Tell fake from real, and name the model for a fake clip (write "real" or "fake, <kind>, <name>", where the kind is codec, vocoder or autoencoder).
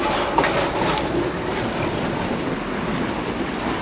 real